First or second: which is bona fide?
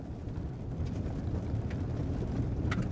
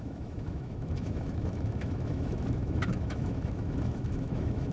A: first